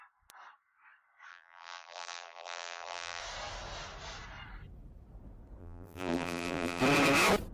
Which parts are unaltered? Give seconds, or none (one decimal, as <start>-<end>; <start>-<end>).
0.0-1.3; 3.2-5.6; 6.8-7.5